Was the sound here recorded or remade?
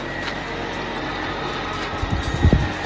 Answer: recorded